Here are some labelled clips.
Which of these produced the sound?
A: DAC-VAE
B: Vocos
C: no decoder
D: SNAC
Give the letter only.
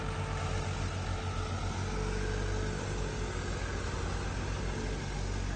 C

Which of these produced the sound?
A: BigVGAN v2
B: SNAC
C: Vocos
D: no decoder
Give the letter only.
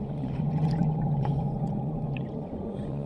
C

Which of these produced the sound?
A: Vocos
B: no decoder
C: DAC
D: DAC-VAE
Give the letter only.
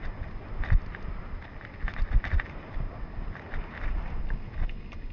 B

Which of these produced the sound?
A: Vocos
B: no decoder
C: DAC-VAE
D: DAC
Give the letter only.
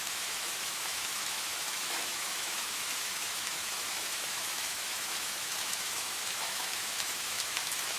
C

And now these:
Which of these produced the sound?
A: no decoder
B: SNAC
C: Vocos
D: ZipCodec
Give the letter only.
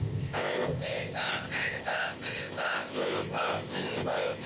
D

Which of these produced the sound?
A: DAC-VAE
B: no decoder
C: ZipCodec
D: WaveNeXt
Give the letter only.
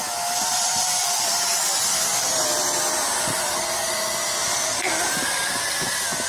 B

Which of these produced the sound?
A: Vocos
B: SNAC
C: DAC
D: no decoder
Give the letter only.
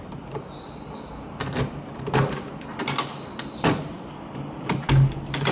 D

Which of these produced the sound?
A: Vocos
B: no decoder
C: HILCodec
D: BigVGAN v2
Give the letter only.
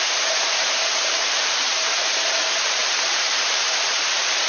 D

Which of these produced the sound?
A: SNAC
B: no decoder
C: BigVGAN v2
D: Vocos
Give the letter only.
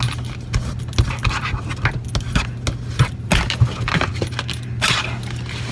B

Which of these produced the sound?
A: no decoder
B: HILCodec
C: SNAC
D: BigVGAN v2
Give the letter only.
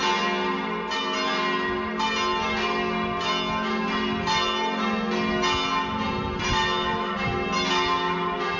A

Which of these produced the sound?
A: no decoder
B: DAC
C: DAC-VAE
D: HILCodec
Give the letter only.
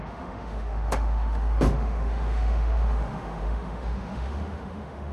C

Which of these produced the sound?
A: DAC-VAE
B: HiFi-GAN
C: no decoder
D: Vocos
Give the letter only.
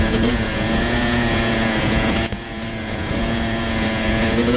D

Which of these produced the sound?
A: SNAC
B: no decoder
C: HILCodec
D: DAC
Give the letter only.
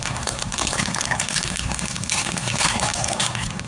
A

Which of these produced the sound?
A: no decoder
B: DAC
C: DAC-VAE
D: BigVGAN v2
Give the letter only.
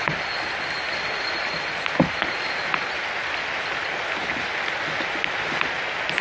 A